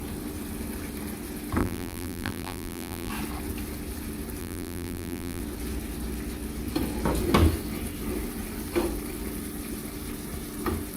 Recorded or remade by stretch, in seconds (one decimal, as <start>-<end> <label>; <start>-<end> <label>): 0.0-1.6 recorded; 1.6-3.1 remade; 3.1-4.4 recorded; 4.4-5.4 remade; 5.4-11.0 recorded